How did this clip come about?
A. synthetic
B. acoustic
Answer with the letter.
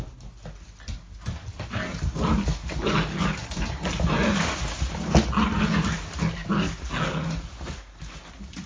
B